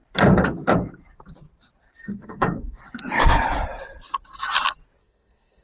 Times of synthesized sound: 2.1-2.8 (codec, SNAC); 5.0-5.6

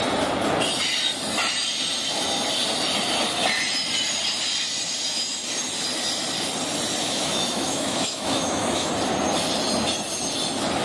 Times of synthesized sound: 7.0-8.9 (autoencoder, DAC-VAE)

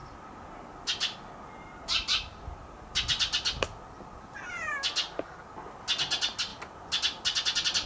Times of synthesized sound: none

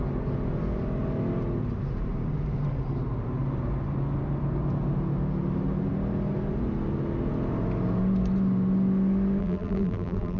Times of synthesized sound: 9.4-10.4 (vocoder, BigVGAN v2)

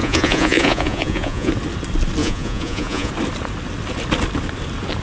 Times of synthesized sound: 0.0-1.5 (vocoder, Vocos); 2.2-3.1

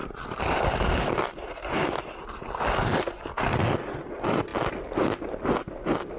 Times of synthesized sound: none

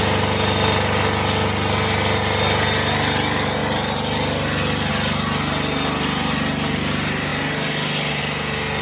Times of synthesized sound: none